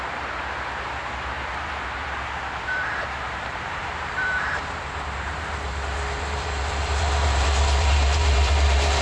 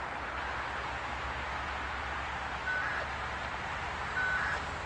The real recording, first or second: second